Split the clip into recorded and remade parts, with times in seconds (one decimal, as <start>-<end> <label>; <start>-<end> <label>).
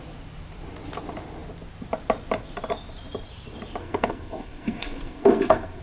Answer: 0.0-3.8 recorded; 3.8-5.8 remade